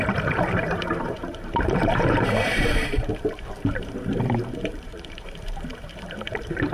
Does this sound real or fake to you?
fake